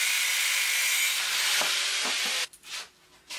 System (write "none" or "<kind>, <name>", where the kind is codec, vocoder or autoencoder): none